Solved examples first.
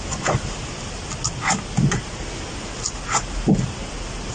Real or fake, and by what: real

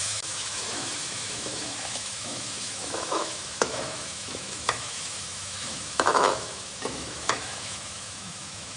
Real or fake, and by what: fake, autoencoder, DAC-VAE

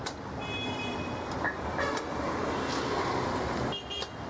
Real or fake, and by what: real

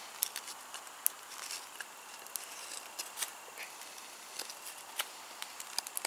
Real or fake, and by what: real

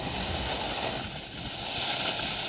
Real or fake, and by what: real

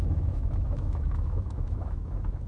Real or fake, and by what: fake, autoencoder, DAC-VAE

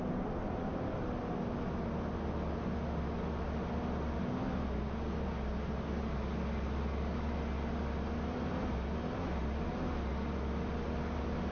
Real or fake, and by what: real